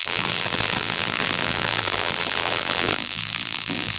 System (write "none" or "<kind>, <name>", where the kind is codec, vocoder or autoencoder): vocoder, BigVGAN v2